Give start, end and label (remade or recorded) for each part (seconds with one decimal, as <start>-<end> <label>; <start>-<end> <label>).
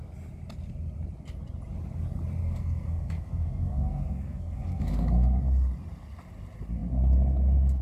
0.0-2.4 recorded; 2.4-5.4 remade; 5.4-7.8 recorded